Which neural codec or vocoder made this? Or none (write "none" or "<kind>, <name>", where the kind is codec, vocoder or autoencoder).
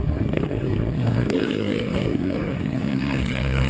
codec, SNAC